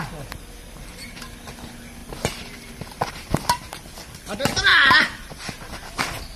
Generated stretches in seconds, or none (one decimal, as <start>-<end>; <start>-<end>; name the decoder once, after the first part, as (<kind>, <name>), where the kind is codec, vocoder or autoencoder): 0.9-1.5 (vocoder, BigVGAN v2); 2.0-3.6; 4.7-6.0